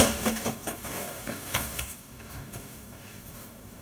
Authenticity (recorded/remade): remade